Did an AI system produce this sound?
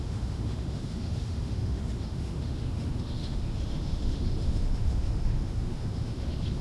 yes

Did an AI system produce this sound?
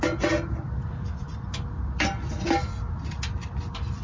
no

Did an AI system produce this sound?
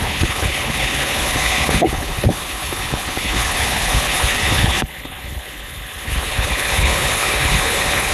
yes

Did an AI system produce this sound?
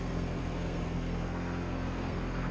yes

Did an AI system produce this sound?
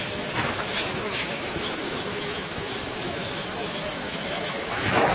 yes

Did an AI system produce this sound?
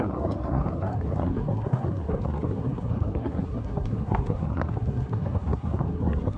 yes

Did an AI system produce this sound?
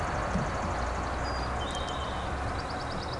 no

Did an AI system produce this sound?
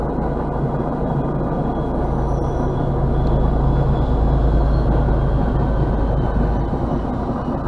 no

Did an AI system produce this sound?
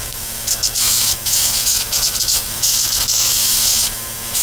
yes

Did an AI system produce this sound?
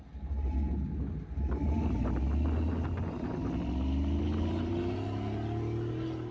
no